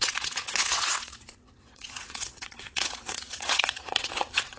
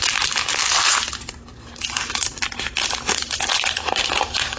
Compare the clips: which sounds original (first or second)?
second